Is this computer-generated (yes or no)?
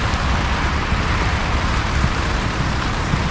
yes